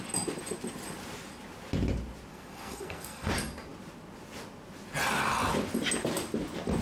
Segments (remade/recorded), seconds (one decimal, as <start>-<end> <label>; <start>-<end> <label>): 0.0-2.3 recorded; 2.3-3.3 remade; 3.3-6.8 recorded